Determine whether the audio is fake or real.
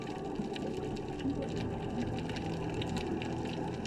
real